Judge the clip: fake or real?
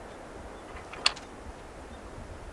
real